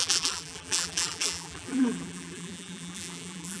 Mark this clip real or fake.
fake